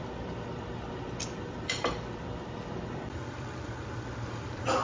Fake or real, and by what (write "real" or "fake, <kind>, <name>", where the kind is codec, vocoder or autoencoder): fake, vocoder, BigVGAN v2